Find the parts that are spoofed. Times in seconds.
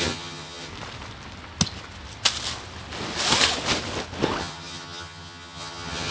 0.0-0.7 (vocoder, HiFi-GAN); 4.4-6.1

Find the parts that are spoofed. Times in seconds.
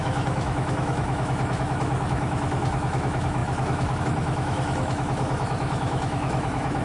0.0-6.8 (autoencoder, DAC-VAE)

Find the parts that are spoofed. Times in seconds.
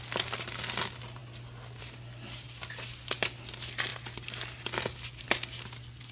none